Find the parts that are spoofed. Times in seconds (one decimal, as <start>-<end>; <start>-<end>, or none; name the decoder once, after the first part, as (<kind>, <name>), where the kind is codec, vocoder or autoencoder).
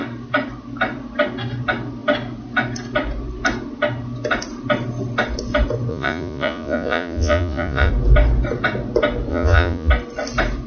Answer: 5.9-7.9 (vocoder, Vocos); 9.3-9.9